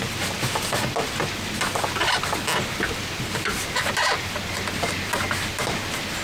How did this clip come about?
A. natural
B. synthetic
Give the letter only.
A